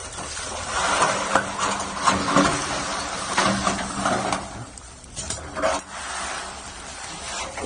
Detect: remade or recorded remade